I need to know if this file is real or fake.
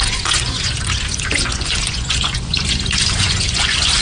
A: fake